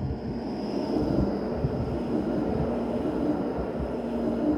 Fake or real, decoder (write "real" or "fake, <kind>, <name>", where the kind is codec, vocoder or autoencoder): real